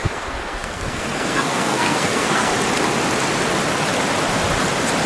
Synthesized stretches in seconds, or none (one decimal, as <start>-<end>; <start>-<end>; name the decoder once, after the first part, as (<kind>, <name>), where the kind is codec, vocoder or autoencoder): 0.0-2.5 (codec, SNAC)